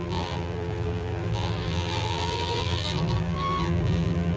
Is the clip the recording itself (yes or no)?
no